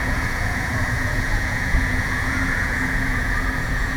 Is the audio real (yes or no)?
no